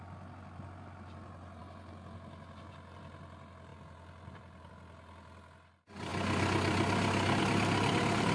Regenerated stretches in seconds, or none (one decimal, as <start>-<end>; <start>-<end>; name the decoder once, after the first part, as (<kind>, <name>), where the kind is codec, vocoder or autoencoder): none